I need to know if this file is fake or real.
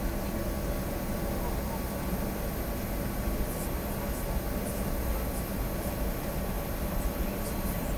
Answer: real